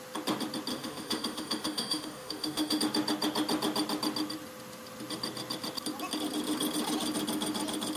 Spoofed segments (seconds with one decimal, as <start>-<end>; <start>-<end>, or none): 0.7-2.8